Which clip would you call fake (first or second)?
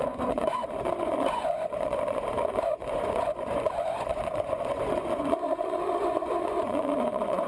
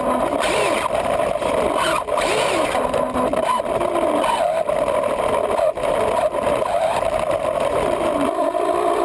first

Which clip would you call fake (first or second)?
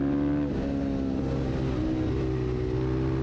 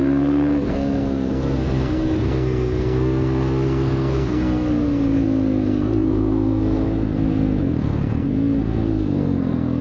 second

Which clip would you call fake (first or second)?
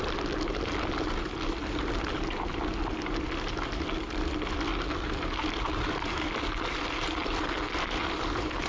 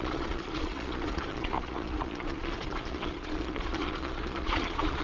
second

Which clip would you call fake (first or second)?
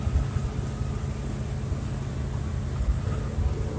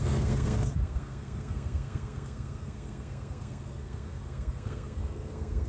second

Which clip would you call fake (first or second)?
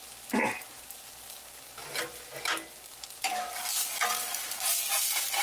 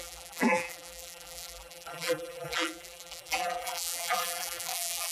second